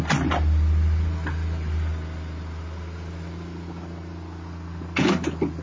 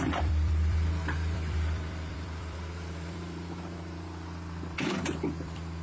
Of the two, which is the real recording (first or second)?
first